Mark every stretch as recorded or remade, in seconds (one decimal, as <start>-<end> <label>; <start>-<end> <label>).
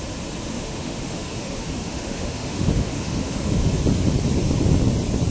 0.0-0.5 recorded; 0.5-3.7 remade; 3.7-5.3 recorded